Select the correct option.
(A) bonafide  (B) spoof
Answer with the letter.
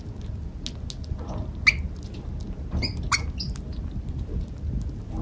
A